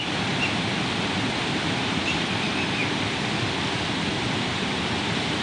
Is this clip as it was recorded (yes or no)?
no